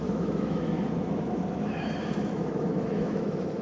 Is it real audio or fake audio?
fake